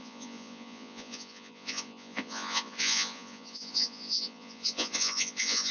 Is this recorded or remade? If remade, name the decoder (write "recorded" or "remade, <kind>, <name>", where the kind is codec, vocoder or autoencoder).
remade, vocoder, Vocos